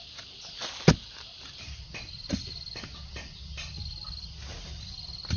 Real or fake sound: real